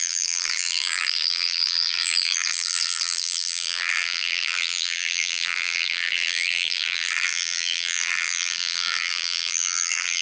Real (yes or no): no